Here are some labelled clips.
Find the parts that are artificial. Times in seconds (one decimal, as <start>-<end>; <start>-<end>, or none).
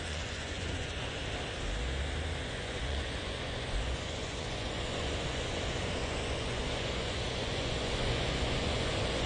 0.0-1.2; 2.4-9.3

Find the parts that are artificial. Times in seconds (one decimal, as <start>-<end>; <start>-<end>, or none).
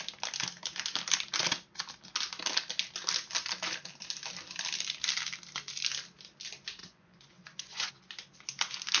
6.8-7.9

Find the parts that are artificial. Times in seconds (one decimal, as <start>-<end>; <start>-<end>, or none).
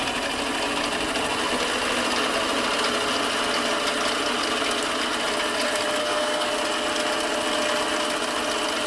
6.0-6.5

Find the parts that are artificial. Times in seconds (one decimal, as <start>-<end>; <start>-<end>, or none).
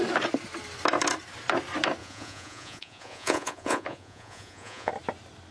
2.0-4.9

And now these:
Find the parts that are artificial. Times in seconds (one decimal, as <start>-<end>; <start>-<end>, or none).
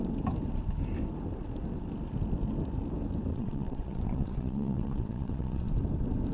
3.3-5.7